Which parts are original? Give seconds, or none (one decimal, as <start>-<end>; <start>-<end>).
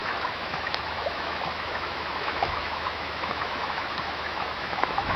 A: none